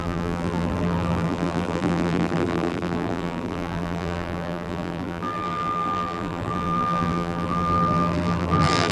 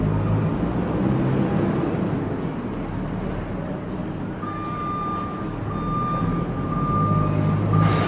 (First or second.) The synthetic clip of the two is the first